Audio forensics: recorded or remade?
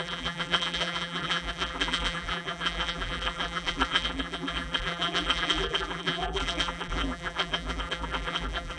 remade